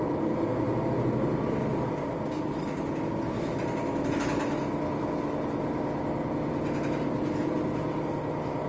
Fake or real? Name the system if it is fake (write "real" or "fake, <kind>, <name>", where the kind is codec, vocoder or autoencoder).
real